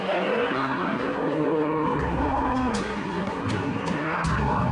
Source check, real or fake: fake